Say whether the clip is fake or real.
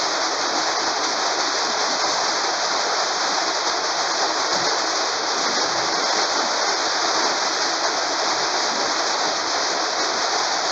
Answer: real